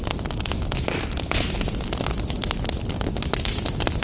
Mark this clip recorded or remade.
recorded